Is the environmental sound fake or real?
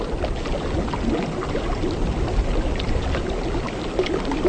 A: real